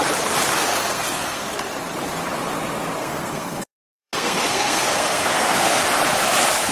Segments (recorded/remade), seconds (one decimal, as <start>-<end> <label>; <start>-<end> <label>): 0.0-0.5 recorded; 0.5-1.5 remade; 1.5-3.0 recorded; 3.0-5.8 remade; 5.8-6.7 recorded